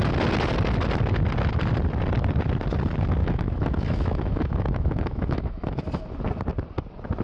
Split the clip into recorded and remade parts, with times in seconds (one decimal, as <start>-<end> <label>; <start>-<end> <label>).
0.0-3.2 recorded; 3.2-5.8 remade; 5.8-7.2 recorded